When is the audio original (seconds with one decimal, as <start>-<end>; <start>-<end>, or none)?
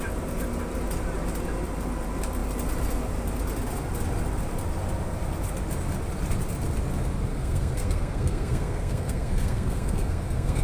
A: 0.0-7.3